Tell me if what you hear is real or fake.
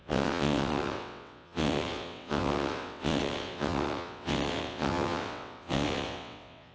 fake